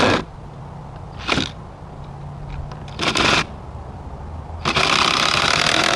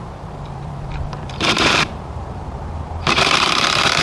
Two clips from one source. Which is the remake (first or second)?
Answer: second